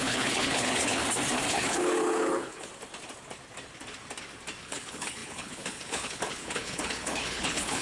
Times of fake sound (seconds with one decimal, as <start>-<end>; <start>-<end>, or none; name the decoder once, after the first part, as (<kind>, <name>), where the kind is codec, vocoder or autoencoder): 0.0-1.0 (codec, HILCodec); 1.5-2.7; 4.6-7.8